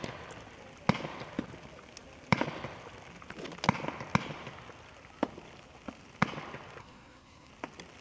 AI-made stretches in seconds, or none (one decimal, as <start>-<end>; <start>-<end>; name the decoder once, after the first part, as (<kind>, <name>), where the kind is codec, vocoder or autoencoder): 6.8-7.5 (codec, SNAC)